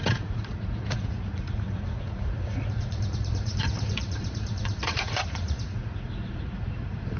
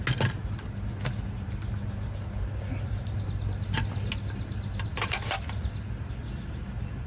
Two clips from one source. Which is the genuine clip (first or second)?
second